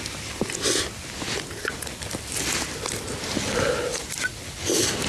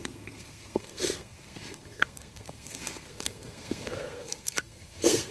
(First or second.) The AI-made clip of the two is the second